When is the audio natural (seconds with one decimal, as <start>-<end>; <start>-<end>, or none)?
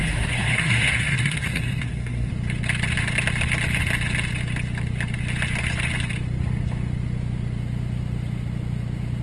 2.3-9.2